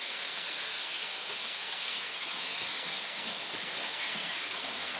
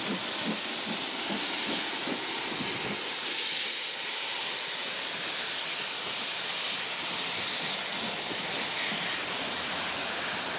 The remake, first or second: first